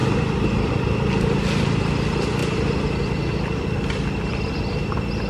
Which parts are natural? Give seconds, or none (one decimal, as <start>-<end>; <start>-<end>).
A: 0.0-5.3